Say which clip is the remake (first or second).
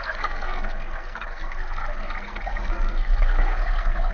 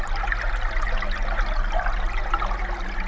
first